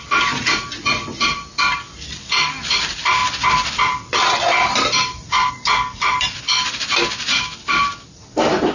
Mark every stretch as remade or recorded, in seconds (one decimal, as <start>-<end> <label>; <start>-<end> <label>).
0.0-8.7 recorded